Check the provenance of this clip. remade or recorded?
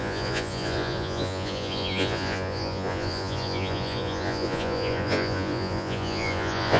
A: remade